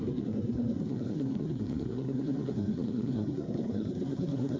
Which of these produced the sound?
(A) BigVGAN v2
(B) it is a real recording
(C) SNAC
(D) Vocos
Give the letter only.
C